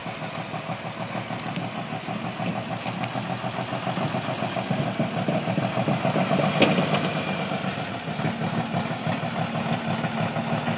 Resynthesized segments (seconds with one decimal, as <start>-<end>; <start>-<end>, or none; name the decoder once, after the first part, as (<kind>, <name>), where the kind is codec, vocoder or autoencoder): none